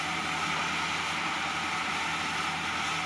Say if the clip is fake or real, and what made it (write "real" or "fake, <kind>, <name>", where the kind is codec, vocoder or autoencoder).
real